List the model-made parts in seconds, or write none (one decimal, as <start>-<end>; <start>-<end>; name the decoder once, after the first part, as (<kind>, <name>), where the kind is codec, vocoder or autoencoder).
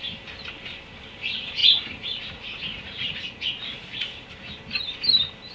1.6-4.3 (vocoder, Vocos)